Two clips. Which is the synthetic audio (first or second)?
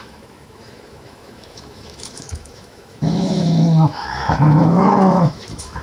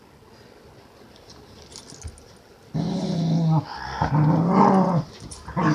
first